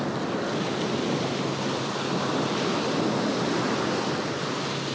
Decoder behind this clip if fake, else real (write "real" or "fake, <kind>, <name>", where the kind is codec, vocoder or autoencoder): real